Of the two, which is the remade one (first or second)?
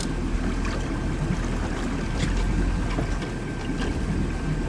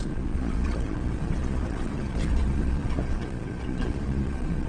second